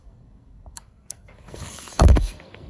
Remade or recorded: remade